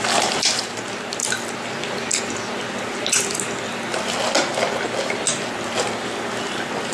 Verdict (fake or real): real